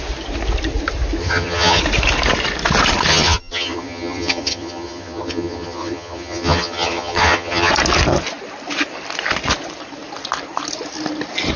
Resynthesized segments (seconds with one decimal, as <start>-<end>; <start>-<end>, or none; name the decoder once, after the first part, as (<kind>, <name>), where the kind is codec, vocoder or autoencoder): 1.2-1.8 (vocoder, HiFi-GAN); 3.1-7.7